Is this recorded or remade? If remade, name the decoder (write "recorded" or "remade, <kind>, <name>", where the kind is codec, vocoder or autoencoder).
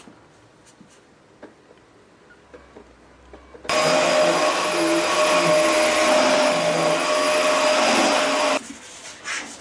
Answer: recorded